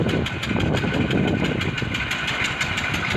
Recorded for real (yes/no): yes